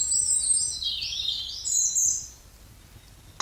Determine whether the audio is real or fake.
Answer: real